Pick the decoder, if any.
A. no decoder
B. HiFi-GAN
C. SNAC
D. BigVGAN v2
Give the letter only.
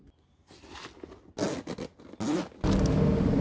A